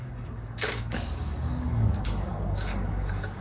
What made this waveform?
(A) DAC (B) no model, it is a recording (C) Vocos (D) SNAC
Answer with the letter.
A